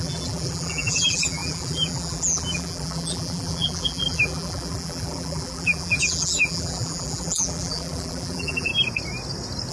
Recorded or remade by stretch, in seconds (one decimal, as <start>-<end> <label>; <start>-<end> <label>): 0.0-8.7 remade; 8.7-9.7 recorded